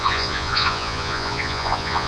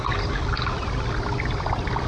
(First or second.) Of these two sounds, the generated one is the first